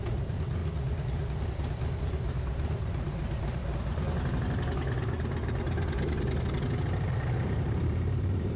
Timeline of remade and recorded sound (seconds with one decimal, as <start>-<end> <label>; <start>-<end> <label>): 0.0-0.6 remade; 0.6-1.4 recorded; 1.4-3.6 remade; 3.6-7.1 recorded; 7.1-8.6 remade